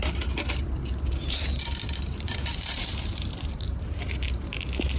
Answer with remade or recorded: remade